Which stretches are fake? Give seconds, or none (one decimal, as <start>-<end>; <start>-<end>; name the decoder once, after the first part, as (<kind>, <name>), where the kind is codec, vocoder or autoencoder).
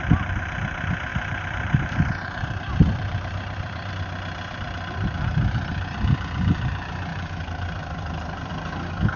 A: 1.1-3.9 (vocoder, BigVGAN v2); 7.1-8.5